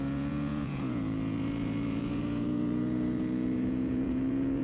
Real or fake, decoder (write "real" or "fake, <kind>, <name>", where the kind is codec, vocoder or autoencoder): fake, vocoder, Vocos